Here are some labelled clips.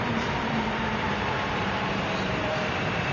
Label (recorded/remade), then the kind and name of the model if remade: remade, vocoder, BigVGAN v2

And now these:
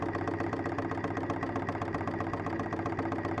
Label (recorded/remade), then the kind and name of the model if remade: recorded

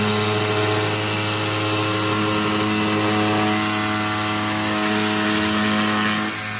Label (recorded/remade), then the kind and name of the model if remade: recorded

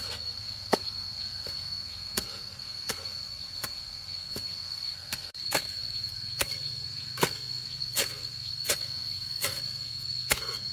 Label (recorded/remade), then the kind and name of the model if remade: remade, codec, SNAC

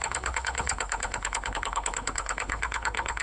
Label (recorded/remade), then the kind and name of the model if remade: remade, codec, HILCodec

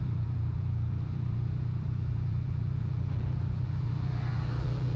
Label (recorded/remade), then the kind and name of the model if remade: remade, vocoder, BigVGAN v2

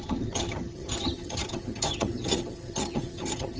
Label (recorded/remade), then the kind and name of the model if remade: remade, vocoder, HiFi-GAN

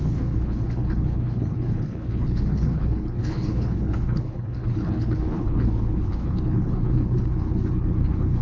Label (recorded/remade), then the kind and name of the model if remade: remade, codec, HILCodec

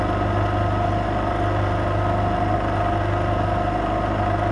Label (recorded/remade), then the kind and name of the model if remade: recorded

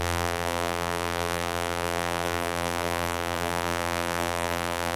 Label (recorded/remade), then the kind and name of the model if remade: remade, vocoder, BigVGAN v2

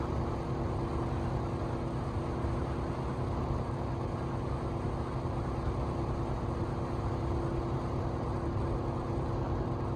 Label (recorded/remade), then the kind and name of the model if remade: recorded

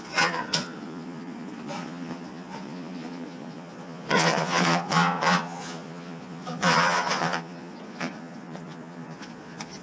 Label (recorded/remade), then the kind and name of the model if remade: remade, vocoder, Vocos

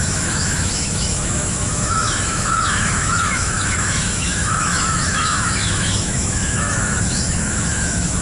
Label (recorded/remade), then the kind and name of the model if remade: remade, autoencoder, DAC-VAE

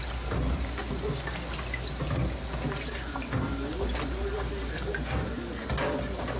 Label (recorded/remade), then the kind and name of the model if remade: recorded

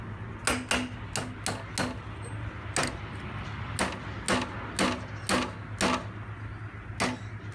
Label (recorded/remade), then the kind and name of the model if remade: recorded